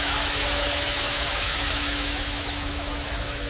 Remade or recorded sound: remade